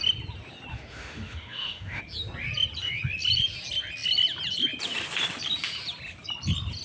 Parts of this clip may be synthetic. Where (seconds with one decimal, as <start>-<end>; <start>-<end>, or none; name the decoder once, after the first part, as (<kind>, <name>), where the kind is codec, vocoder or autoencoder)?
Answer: 0.7-2.0 (autoencoder, DAC-VAE)

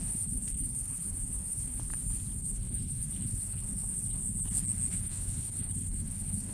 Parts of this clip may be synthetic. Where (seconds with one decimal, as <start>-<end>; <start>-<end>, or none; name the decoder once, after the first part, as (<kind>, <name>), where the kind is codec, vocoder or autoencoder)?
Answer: 0.0-1.9 (codec, HILCodec); 2.4-4.2; 4.9-6.5

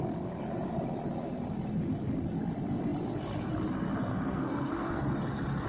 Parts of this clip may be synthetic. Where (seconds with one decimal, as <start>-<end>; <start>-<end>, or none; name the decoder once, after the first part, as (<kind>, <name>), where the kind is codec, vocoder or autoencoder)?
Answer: 4.1-5.0 (codec, SNAC)

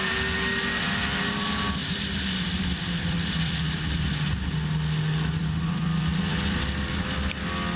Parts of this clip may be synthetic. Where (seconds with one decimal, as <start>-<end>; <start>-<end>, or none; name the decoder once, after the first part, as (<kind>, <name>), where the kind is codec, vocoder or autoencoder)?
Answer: 1.8-4.1 (vocoder, BigVGAN v2); 5.4-7.0